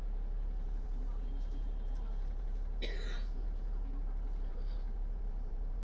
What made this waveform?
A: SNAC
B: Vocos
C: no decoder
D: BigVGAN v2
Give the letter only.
D